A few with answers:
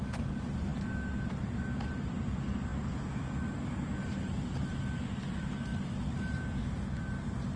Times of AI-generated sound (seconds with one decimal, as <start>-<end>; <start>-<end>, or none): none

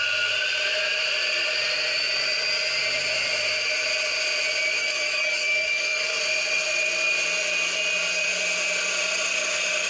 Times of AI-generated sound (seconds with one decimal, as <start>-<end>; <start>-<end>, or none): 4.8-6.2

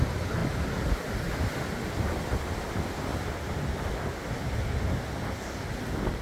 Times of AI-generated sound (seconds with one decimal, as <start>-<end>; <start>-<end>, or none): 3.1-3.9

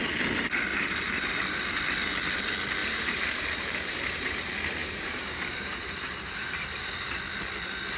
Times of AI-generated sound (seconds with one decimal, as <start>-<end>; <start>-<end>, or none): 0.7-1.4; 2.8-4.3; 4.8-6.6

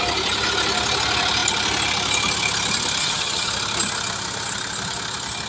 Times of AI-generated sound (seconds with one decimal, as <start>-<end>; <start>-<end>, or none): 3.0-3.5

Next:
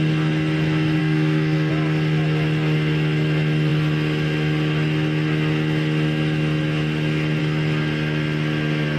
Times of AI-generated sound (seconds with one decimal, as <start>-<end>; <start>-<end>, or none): 1.0-1.7

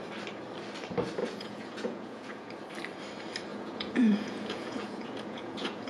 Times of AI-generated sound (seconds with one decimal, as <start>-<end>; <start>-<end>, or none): 1.2-2.5; 3.5-5.9